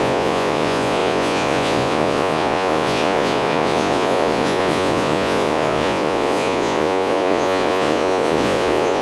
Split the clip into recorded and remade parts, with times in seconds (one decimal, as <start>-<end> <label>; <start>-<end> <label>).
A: 0.0-9.0 remade